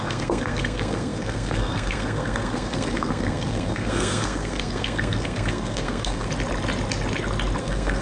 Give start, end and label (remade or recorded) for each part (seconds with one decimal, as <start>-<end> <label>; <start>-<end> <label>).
0.0-6.3 remade; 6.3-7.6 recorded; 7.6-8.0 remade